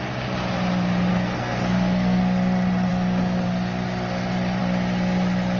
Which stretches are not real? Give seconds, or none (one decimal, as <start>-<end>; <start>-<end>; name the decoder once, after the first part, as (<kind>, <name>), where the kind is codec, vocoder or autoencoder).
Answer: 1.1-2.2 (codec, SNAC)